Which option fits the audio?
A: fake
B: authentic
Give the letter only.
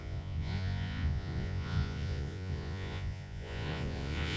A